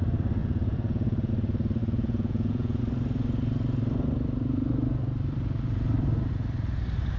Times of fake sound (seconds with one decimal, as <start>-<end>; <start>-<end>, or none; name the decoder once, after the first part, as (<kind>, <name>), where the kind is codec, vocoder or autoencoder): 0.4-1.3 (vocoder, Vocos); 1.8-2.8